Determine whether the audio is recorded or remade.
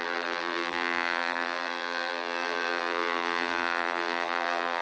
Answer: remade